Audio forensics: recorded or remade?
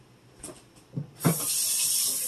recorded